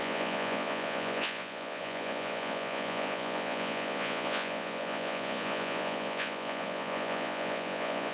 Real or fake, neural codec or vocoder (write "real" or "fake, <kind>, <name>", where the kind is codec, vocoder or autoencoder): fake, vocoder, Vocos